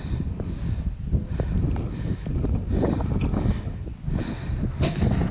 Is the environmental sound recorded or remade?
recorded